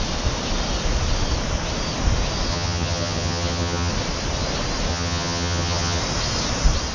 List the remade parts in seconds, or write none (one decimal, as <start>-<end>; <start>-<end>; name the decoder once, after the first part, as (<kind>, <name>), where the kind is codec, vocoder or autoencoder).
2.5-3.9 (vocoder, HiFi-GAN); 4.9-6.0